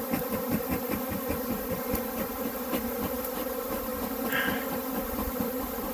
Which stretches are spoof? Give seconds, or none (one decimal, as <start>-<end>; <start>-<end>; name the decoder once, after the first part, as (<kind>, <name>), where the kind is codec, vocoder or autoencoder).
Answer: 0.0-3.9 (vocoder, BigVGAN v2); 4.6-5.9